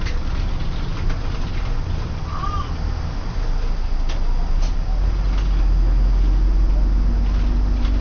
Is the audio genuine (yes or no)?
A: yes